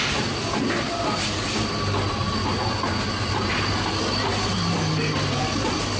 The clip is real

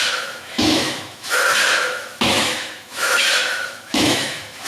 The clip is fake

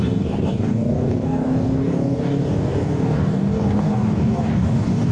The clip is fake